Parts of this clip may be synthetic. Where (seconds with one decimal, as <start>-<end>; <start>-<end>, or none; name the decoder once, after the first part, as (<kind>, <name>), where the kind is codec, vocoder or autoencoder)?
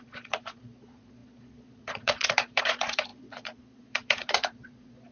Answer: 0.0-5.1 (vocoder, Vocos)